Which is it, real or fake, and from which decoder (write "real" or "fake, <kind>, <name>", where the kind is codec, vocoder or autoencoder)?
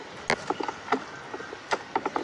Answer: real